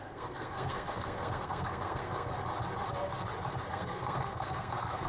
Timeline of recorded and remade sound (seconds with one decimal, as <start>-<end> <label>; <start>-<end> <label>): 0.0-2.3 remade; 2.3-3.7 recorded; 3.7-5.1 remade